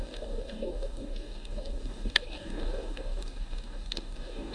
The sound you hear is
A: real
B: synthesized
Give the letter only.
B